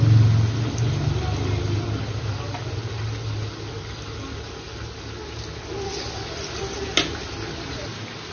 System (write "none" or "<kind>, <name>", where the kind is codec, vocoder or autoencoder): none